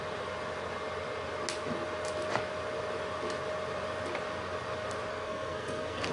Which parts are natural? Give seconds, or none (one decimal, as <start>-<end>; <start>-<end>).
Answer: 0.0-5.1